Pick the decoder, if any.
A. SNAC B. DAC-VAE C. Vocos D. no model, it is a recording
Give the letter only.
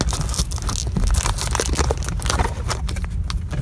D